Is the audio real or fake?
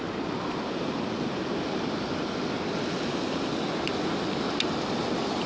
real